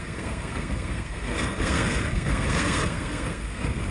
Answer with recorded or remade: remade